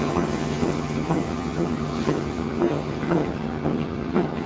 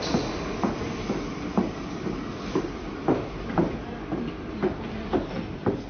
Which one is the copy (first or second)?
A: first